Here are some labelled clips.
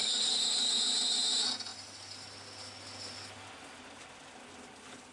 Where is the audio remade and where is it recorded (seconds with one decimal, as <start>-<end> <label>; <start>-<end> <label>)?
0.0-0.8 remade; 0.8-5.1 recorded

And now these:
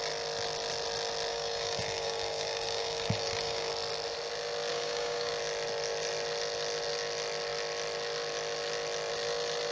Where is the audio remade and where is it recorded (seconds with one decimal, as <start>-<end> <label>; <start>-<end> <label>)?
0.0-1.3 recorded; 1.3-3.7 remade; 3.7-4.7 recorded; 4.7-5.3 remade; 5.3-9.7 recorded

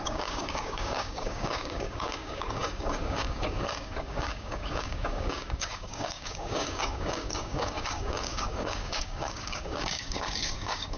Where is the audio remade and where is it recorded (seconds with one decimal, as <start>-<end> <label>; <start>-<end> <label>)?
0.0-11.0 remade

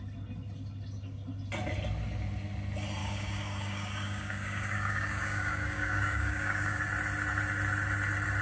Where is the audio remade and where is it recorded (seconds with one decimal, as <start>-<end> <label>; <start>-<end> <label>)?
0.0-3.0 recorded; 3.0-6.8 remade; 6.8-8.4 recorded

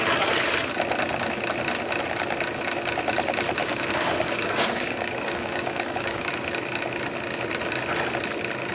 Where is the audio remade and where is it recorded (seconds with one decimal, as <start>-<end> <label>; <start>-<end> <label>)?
0.0-3.6 recorded; 3.6-6.3 remade; 6.3-8.7 recorded

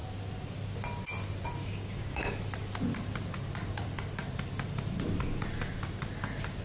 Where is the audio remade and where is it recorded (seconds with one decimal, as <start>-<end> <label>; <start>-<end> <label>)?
0.0-1.6 recorded; 1.6-2.3 remade; 2.3-6.6 recorded

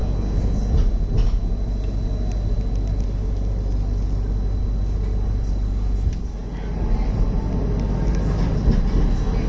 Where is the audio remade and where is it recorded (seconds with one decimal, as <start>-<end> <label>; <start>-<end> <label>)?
0.0-9.5 recorded